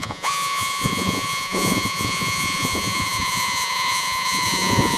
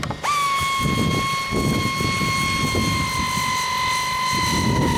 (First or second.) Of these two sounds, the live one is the second